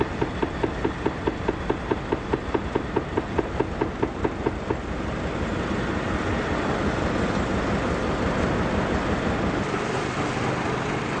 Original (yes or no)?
yes